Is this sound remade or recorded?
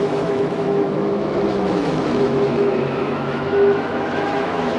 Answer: remade